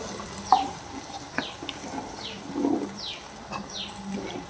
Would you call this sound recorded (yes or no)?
yes